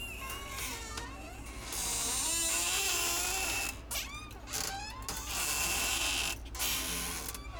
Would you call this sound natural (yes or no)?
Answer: yes